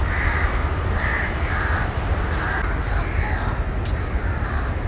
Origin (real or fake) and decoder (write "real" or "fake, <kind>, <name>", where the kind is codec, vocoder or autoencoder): real